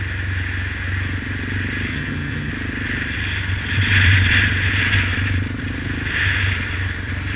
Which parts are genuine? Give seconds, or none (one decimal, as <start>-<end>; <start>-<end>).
0.0-1.9; 2.5-7.4